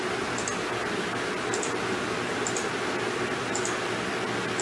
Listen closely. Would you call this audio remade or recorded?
recorded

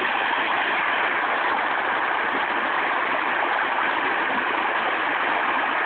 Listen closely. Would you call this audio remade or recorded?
recorded